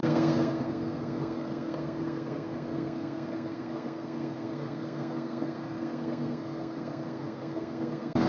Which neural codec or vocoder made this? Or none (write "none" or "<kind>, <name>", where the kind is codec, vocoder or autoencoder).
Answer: codec, SNAC